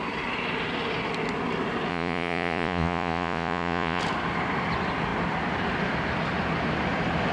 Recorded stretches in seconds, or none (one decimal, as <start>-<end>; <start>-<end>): 0.0-1.9; 4.0-7.3